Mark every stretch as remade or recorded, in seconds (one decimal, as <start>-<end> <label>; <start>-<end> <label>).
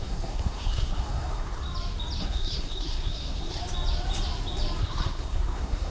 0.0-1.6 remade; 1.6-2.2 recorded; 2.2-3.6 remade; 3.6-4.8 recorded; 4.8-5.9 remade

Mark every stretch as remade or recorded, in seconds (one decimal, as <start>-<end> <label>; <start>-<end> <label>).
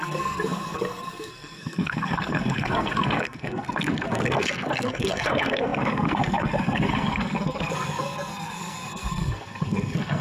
0.0-10.2 remade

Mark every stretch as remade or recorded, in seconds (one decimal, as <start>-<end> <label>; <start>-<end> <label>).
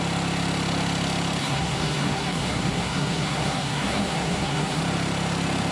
0.0-1.4 recorded; 1.4-4.8 remade; 4.8-5.7 recorded